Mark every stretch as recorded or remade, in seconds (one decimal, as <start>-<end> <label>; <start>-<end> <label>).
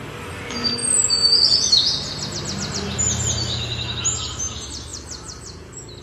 0.0-6.0 recorded